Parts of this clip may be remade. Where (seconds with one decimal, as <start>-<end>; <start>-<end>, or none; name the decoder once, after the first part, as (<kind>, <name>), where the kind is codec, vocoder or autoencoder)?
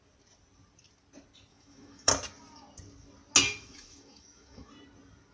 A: 1.5-2.1 (autoencoder, DAC-VAE); 3.4-4.7